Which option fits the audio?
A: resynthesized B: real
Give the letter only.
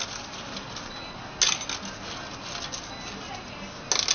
B